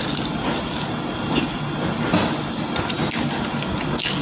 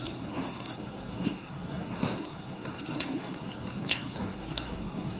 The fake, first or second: second